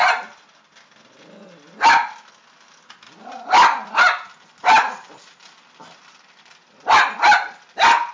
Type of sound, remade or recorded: recorded